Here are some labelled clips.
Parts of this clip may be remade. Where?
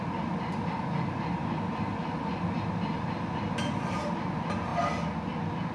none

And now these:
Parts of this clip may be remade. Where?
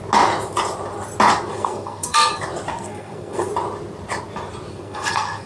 1.5-2.3; 2.7-3.5; 4.7-5.5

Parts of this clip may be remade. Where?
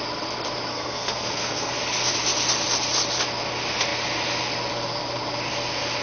0.7-1.7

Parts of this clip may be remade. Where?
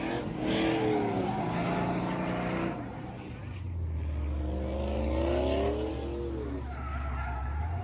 none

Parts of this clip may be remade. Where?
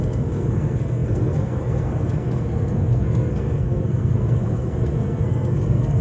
0.0-6.0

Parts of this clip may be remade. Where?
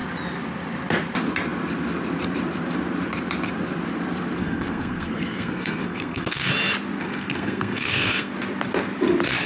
4.4-6.5; 7.0-8.3